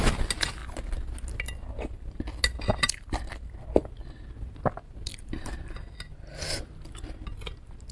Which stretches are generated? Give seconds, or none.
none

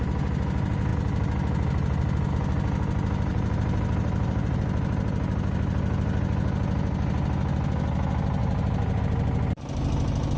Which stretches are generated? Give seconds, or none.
3.3-4.6 (vocoder, BigVGAN v2); 8.4-9.0

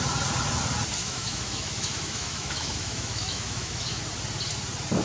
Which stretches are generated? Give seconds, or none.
1.0-4.0 (autoencoder, DAC-VAE)

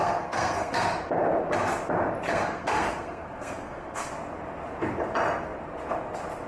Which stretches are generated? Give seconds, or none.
0.0-1.0 (codec, SNAC); 2.3-4.1

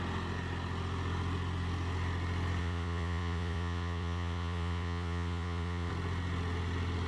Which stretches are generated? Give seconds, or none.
2.6-5.9 (vocoder, Vocos)

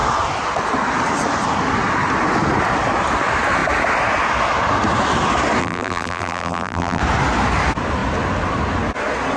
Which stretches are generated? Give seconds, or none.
5.6-7.0 (vocoder, BigVGAN v2)

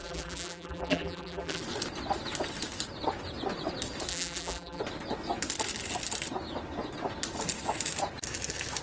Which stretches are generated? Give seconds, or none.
0.0-1.6 (vocoder, BigVGAN v2); 4.1-4.8